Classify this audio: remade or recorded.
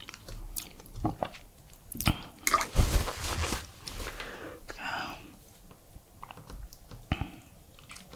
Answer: recorded